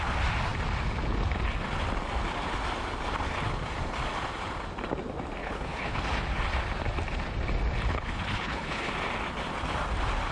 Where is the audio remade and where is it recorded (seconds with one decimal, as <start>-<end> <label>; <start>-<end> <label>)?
0.0-5.4 recorded; 5.4-6.0 remade; 6.0-7.9 recorded; 7.9-8.9 remade; 8.9-10.3 recorded